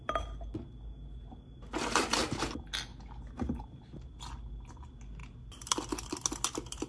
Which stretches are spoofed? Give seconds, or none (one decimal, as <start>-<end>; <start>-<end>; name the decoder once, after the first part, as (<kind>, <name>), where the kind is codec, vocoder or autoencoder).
none